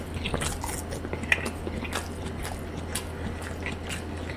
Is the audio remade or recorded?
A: recorded